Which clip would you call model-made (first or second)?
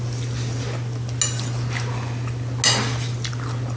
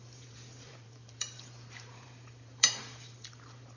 second